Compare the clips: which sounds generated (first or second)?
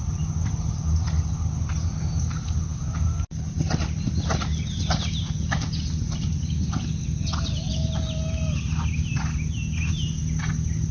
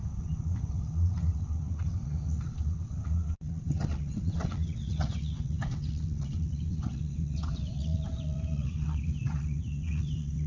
second